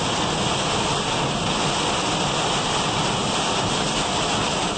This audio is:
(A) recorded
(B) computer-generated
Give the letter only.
B